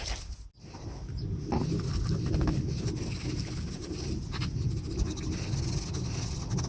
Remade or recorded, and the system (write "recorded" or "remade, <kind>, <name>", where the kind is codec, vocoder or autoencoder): recorded